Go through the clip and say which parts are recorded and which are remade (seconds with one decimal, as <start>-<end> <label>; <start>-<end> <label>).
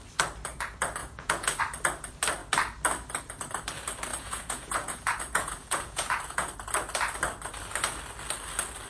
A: 0.0-1.0 recorded; 1.0-1.6 remade; 1.6-4.1 recorded; 4.1-6.5 remade; 6.5-8.9 recorded